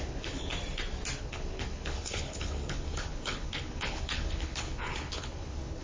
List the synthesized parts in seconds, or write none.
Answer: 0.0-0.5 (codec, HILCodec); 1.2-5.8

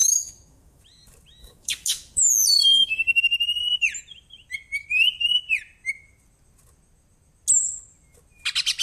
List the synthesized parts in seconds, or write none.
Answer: 0.0-0.8 (autoencoder, DAC-VAE); 1.4-2.3; 2.7-3.2

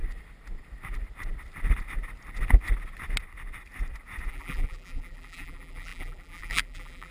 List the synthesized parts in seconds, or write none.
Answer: 4.3-7.1 (vocoder, BigVGAN v2)

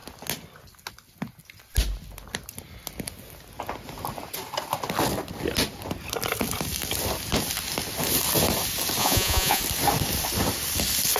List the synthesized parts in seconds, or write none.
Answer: 9.0-9.6 (vocoder, Vocos)

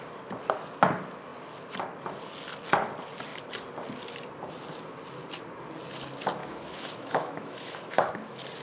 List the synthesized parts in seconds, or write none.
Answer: 6.4-8.1 (autoencoder, DAC-VAE)

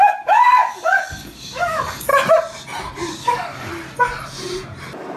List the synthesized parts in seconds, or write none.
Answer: 0.0-2.1 (codec, DAC); 3.1-3.7

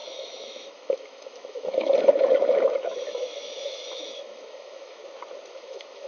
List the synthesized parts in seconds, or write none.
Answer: 0.0-5.0 (autoencoder, DAC-VAE); 5.5-6.1